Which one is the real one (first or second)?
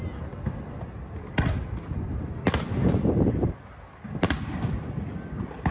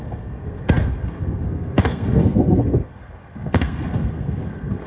first